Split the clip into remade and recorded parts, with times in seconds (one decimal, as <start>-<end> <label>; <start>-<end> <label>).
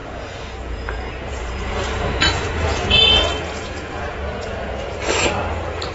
0.0-5.0 remade; 5.0-5.9 recorded